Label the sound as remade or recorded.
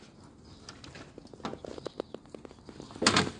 recorded